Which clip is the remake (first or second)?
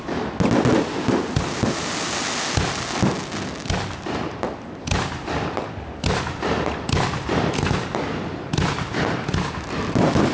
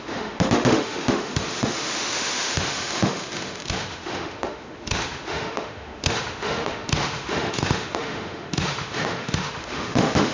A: second